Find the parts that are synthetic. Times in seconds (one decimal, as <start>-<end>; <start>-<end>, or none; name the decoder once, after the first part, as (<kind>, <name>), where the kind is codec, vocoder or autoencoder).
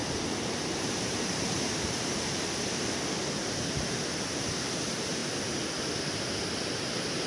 0.0-2.5 (vocoder, BigVGAN v2)